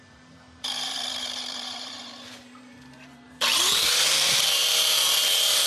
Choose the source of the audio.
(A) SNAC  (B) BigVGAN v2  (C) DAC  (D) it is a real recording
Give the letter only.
B